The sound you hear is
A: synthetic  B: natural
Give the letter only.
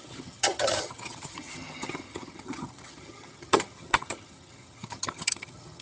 A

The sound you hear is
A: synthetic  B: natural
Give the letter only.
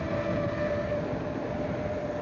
B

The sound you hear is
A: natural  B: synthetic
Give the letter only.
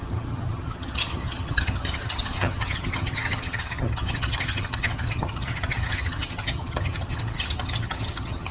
B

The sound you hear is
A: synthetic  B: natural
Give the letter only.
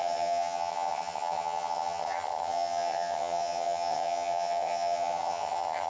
A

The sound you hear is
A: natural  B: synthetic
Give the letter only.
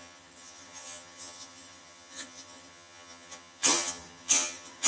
B